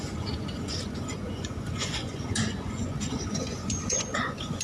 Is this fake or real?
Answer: fake